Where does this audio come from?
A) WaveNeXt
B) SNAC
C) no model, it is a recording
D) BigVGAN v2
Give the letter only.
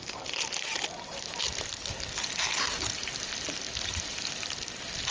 C